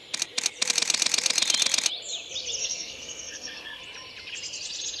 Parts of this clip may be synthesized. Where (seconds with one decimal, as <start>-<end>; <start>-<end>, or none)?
2.6-3.8